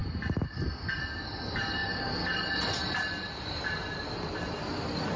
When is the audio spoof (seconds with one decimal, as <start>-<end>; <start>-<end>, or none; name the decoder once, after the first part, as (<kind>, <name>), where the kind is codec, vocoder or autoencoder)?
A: none